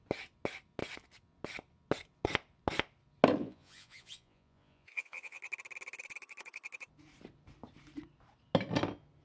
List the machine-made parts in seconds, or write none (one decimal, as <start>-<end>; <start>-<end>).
3.4-5.4